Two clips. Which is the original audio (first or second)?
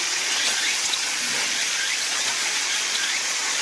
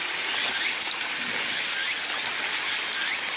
second